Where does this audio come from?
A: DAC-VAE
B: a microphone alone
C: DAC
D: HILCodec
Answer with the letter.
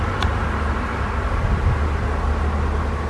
B